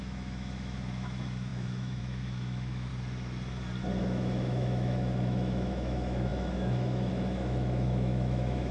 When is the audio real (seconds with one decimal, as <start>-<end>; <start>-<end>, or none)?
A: 2.9-4.0